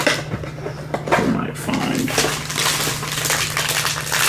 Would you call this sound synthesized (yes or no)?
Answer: no